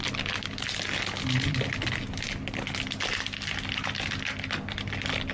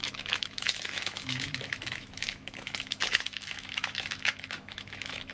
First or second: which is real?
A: first